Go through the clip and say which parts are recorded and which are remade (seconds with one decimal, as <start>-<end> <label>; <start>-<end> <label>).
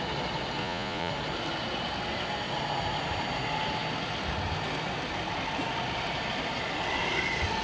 0.0-0.6 recorded; 0.6-1.1 remade; 1.1-7.6 recorded